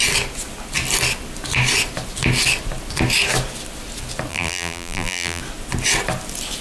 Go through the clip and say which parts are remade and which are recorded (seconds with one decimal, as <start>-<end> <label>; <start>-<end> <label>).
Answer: 0.0-4.3 recorded; 4.3-5.4 remade; 5.4-6.6 recorded